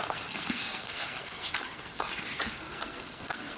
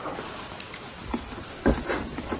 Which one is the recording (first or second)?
second